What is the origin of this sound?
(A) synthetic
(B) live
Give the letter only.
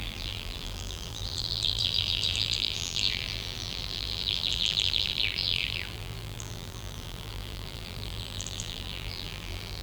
A